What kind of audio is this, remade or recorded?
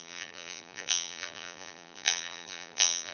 remade